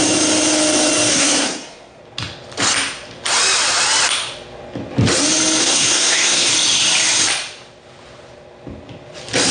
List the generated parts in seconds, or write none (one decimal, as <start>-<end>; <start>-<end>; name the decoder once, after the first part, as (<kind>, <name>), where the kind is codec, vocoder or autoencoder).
1.1-2.0 (codec, SNAC); 5.6-6.5